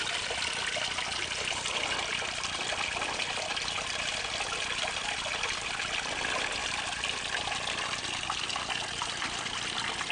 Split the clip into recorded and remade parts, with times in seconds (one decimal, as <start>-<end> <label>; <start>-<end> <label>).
0.0-10.1 recorded